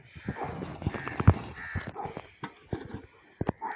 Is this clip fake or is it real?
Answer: real